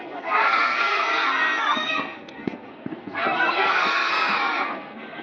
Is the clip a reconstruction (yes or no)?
yes